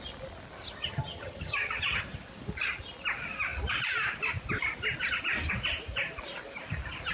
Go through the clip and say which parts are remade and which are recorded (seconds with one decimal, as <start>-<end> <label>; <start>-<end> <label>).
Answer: 0.0-0.8 recorded; 0.8-2.0 remade; 2.0-7.1 recorded